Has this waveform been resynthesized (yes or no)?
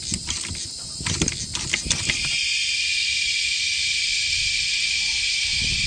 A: no